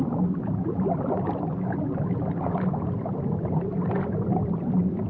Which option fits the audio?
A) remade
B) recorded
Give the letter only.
B